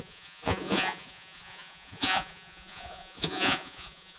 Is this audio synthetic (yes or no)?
yes